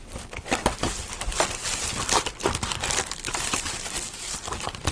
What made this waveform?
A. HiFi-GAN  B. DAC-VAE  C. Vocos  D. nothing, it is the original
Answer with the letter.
D